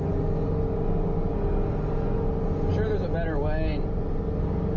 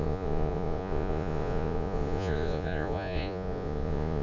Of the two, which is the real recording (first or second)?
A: first